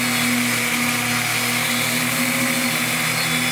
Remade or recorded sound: recorded